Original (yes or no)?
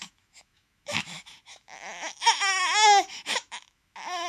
no